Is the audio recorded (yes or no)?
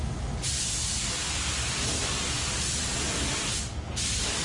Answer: yes